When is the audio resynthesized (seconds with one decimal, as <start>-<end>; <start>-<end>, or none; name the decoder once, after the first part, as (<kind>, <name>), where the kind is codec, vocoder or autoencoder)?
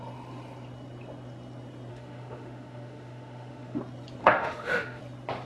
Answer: 1.9-3.8 (autoencoder, DAC-VAE); 4.2-5.0